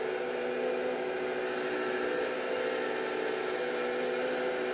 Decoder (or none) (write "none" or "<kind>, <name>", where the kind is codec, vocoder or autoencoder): none